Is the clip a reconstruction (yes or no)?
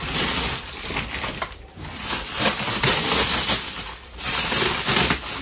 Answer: no